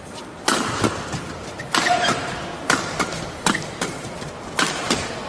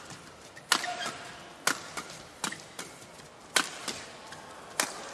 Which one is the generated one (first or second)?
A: first